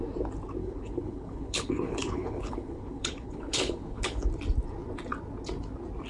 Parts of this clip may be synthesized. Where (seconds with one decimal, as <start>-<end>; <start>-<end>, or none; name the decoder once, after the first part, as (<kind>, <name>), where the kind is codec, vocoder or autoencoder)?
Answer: 0.6-4.3 (codec, HILCodec)